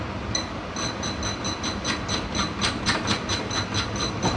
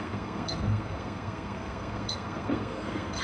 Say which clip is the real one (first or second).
first